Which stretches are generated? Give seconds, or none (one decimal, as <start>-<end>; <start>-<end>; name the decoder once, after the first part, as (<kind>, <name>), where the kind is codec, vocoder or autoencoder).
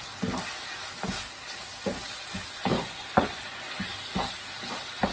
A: 2.7-3.7 (vocoder, Vocos)